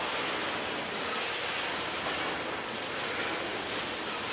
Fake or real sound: real